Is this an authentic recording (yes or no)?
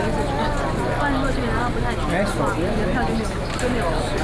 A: yes